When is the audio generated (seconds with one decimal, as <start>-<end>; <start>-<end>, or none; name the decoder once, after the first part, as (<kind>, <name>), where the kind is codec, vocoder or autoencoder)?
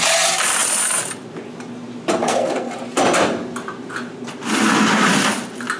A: 2.2-2.7 (codec, SNAC)